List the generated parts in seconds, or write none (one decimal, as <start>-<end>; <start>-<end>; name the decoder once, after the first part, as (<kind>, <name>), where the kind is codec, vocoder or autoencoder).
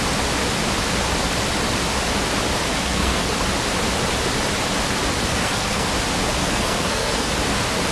2.7-3.3 (codec, SNAC); 5.3-5.9; 6.4-7.3